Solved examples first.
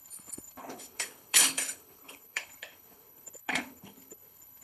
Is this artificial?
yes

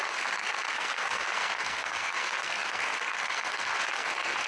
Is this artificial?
yes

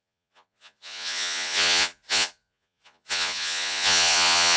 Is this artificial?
yes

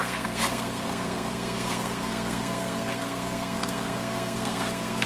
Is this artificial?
yes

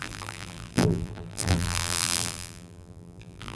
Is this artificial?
yes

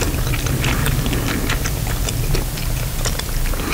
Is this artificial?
no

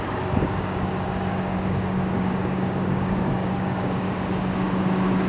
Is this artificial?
yes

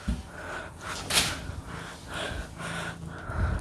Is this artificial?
no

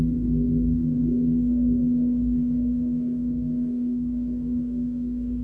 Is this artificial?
yes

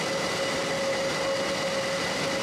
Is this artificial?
no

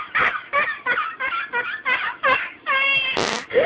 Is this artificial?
no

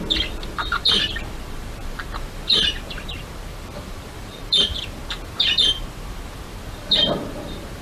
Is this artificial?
yes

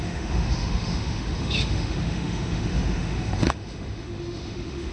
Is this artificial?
yes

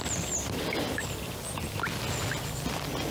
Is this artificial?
no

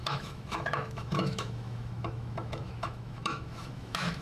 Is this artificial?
yes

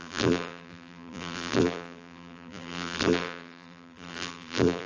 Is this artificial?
yes